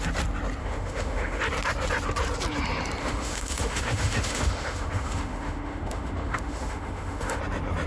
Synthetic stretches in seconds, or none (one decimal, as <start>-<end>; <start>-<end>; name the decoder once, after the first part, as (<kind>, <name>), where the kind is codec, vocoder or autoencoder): 0.6-1.4 (autoencoder, DAC-VAE); 3.0-7.4